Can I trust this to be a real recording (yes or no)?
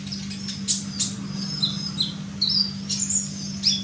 yes